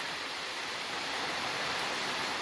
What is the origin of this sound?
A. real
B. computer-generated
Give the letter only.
B